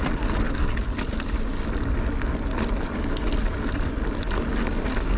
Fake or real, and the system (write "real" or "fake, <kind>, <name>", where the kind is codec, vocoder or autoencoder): real